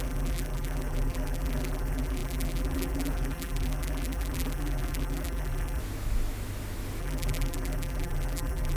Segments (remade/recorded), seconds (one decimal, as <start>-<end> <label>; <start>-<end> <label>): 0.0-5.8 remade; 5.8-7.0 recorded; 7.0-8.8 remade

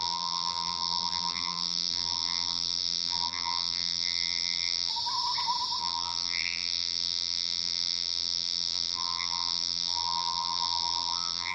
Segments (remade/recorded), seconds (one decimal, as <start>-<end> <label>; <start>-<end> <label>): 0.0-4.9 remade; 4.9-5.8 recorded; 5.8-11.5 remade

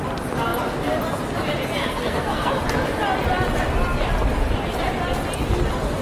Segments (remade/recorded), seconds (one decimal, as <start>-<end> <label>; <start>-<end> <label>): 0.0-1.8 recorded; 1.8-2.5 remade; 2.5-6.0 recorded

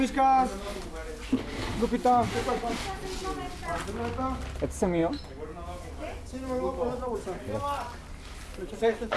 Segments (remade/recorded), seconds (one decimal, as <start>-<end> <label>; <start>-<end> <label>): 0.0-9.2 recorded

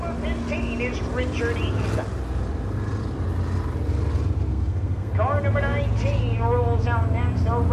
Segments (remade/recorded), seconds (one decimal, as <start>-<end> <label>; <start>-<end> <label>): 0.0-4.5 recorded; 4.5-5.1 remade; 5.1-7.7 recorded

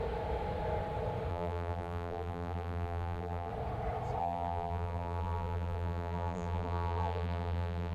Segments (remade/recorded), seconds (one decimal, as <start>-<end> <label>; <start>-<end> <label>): 0.0-1.3 recorded; 1.3-3.5 remade; 3.5-4.2 recorded; 4.2-7.9 remade

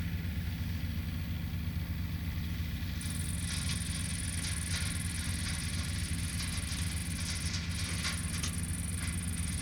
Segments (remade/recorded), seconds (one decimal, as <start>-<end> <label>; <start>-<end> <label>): 0.0-9.6 recorded

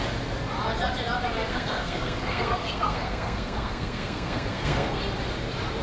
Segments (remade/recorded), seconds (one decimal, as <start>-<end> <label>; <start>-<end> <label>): 0.0-1.5 recorded; 1.5-5.0 remade; 5.0-5.8 recorded